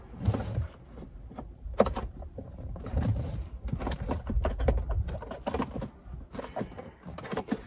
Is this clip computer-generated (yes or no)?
no